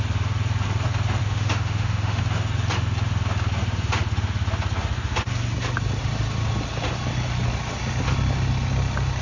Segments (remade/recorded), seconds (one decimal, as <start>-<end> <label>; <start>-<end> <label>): 0.0-1.2 recorded; 1.2-2.2 remade; 2.2-9.2 recorded